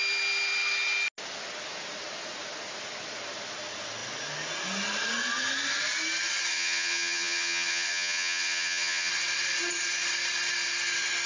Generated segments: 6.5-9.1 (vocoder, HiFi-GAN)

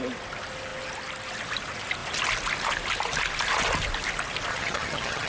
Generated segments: 4.5-5.3 (vocoder, HiFi-GAN)

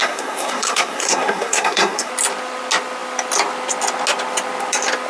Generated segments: 0.0-2.1 (codec, SNAC)

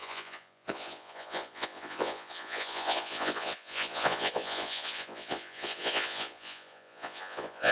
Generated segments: 0.0-7.7 (vocoder, Vocos)

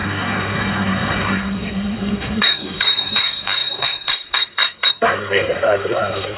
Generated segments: 0.0-6.4 (codec, SNAC)

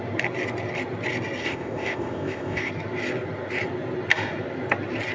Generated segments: 1.4-2.7 (codec, ZipCodec)